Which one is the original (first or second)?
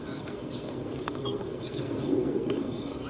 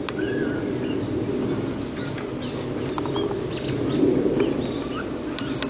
second